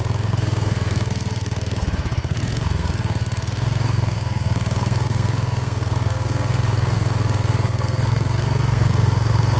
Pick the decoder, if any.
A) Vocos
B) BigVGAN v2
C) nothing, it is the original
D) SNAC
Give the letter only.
D